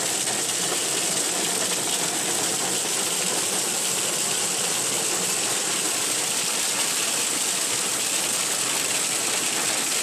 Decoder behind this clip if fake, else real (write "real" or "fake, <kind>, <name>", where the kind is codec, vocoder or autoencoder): real